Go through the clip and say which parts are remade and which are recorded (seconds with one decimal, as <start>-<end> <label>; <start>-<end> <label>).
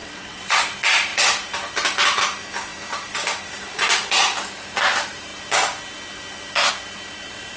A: 0.0-0.6 remade; 0.6-7.6 recorded